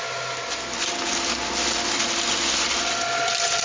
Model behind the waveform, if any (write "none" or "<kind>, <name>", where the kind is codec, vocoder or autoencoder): none